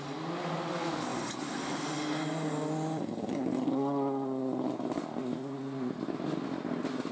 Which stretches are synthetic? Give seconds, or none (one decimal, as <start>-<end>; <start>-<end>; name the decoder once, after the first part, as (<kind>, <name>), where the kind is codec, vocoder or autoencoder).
none